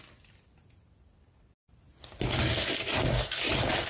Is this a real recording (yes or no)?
yes